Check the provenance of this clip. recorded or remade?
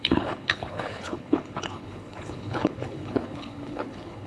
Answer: remade